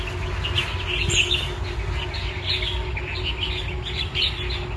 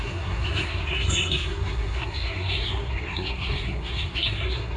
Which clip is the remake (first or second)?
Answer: second